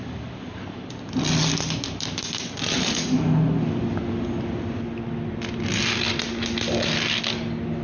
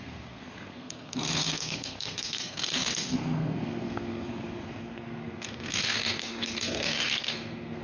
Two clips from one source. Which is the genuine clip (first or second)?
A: first